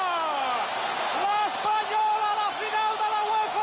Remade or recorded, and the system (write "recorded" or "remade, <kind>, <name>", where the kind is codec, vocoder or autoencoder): recorded